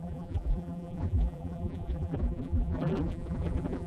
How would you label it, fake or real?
fake